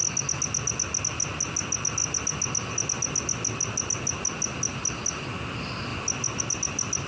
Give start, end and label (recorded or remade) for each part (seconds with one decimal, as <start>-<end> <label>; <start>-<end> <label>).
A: 0.0-7.1 recorded